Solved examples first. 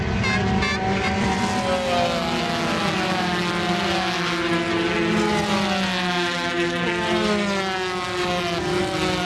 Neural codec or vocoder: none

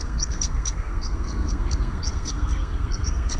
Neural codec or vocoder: codec, SNAC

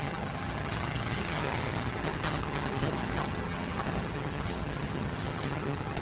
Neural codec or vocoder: vocoder, HiFi-GAN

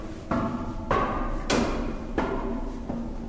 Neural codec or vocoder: none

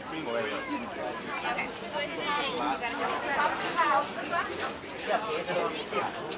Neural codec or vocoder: none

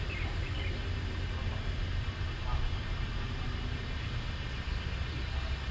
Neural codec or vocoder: none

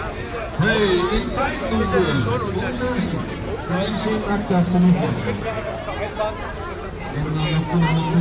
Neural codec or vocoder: none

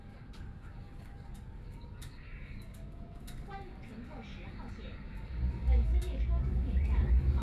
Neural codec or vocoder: codec, DAC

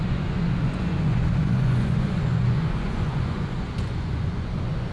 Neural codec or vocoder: vocoder, Vocos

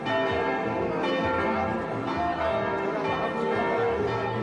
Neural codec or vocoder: none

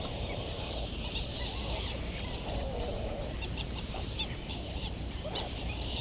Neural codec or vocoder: vocoder, BigVGAN v2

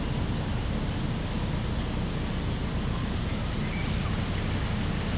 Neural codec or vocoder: none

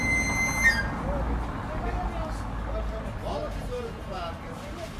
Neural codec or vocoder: none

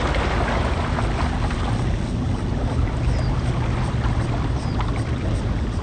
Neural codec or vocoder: none